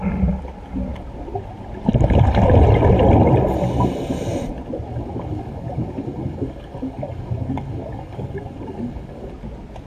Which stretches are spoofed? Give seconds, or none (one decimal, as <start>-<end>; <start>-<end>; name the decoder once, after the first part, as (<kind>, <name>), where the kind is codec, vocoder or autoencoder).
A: 4.9-9.3 (codec, DAC)